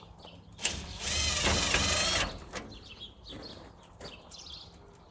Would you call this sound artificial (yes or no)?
no